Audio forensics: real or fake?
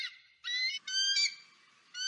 real